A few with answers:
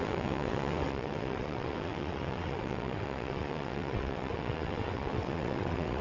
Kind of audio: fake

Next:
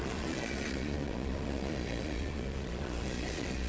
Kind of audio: fake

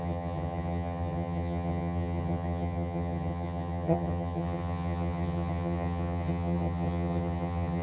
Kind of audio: fake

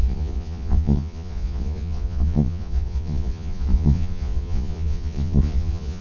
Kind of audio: fake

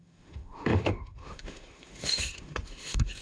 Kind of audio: fake